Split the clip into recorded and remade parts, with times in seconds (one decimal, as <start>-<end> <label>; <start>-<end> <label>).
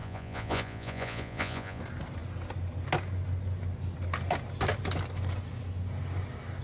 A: 0.0-1.8 remade; 1.8-6.6 recorded